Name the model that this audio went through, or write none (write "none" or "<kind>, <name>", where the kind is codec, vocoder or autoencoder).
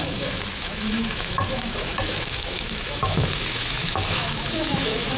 autoencoder, DAC-VAE